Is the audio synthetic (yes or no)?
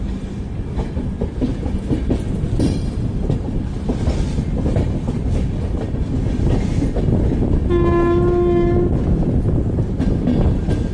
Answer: no